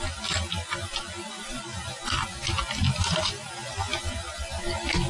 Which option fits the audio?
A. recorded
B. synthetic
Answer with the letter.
A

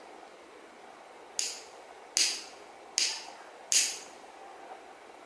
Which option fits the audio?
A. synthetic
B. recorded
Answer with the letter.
B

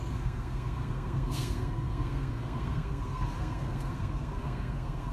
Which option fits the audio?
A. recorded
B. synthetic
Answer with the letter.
B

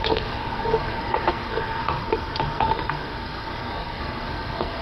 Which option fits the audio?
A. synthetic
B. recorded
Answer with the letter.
A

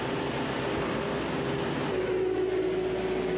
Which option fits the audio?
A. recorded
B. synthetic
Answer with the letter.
A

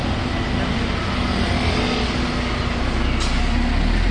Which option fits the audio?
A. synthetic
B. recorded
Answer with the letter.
B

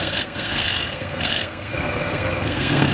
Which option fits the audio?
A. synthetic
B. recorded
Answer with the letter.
A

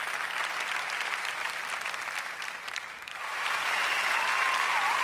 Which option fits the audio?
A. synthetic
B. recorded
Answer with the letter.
B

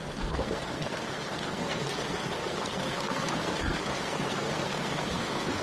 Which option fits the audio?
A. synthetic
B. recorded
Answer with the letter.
A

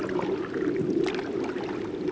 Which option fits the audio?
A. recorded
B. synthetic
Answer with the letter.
A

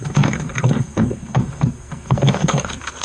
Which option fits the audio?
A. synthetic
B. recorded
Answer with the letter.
A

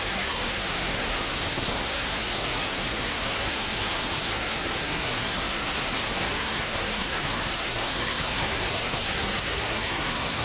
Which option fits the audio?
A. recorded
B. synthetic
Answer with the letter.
B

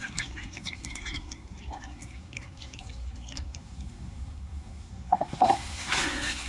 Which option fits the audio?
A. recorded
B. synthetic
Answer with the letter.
B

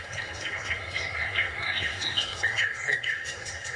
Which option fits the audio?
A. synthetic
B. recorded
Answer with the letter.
A